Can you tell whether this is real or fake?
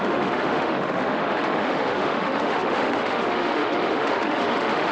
fake